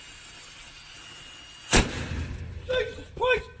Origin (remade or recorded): recorded